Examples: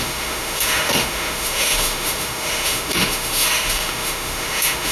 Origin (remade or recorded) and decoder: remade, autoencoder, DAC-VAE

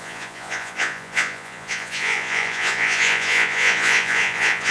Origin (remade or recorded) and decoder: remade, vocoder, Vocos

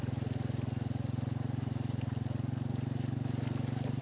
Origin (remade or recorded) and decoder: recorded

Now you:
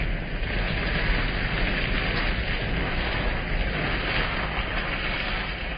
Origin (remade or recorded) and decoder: recorded